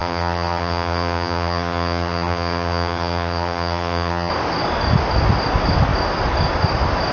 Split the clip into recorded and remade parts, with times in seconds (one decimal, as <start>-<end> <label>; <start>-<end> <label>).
0.0-4.3 remade; 4.3-7.1 recorded